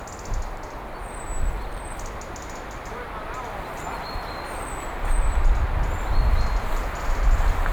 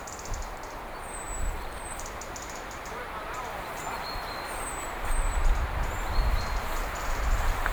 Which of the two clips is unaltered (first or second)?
first